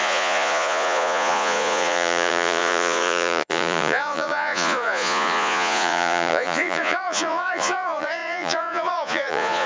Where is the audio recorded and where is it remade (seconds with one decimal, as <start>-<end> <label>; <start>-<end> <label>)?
0.0-9.7 remade